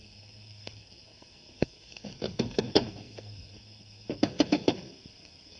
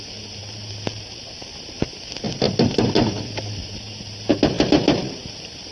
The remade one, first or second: first